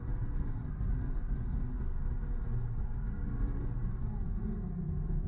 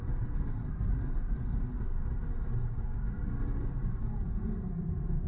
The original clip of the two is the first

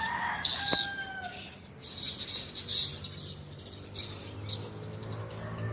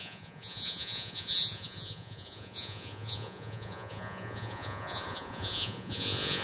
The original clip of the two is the first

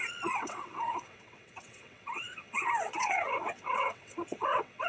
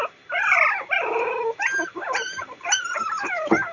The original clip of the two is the second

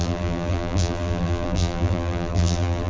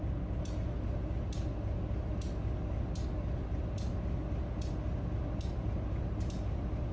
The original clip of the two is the second